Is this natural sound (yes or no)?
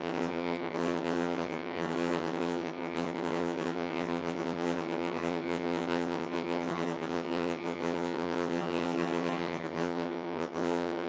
no